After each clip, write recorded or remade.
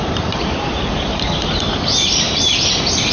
remade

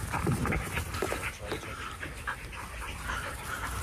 recorded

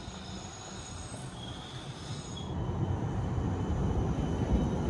recorded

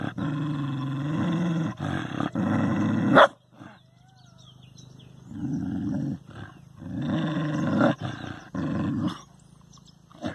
recorded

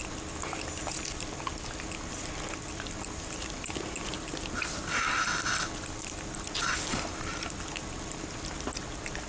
recorded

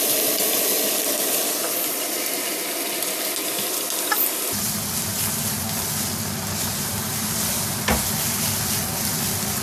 recorded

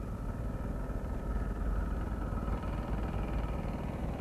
recorded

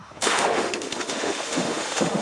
remade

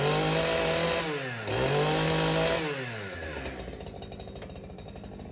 recorded